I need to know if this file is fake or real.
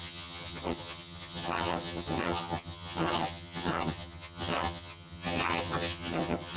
fake